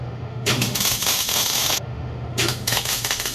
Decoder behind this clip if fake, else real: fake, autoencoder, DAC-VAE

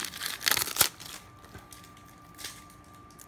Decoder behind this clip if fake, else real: real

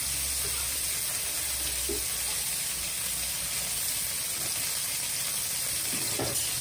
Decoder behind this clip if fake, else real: real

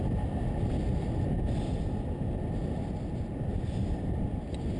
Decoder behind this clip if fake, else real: real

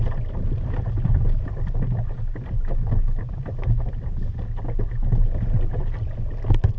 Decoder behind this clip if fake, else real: real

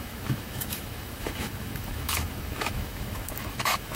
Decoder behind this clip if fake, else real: fake, autoencoder, DAC-VAE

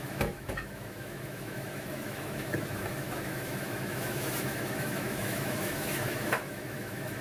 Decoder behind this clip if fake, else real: fake, autoencoder, DAC-VAE